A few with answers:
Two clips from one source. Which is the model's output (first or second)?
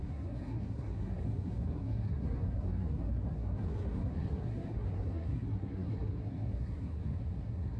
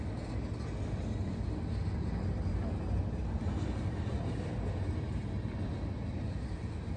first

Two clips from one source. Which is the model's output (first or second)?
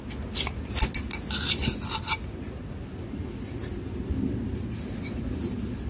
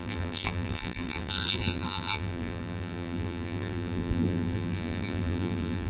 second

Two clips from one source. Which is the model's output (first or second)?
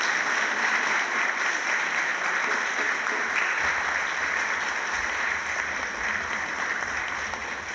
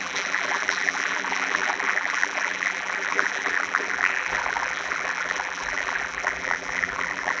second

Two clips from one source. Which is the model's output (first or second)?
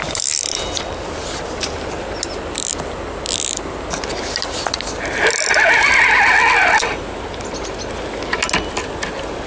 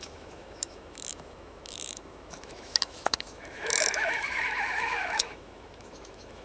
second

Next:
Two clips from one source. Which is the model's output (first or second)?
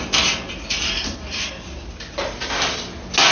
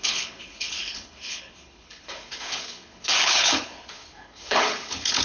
second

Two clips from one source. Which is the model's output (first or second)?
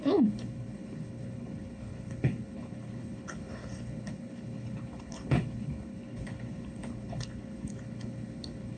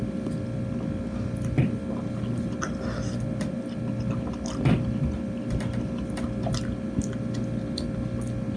first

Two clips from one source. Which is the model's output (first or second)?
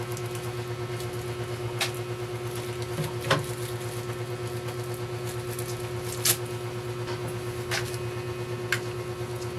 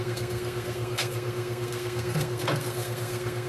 second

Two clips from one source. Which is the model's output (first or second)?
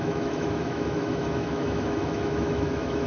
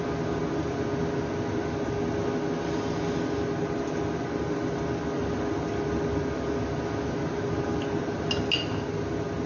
first